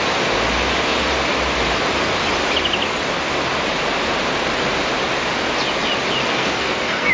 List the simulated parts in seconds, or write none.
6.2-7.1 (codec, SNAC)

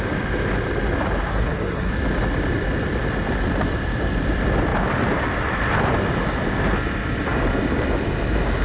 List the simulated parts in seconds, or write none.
1.3-1.9 (codec, SNAC)

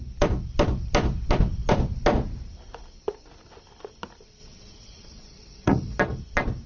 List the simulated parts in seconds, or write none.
4.4-6.0 (vocoder, Vocos)

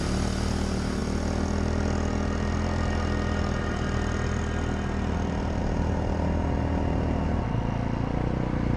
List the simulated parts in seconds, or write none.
none